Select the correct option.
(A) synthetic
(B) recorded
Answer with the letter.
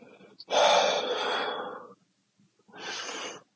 B